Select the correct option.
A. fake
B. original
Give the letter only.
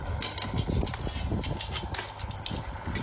B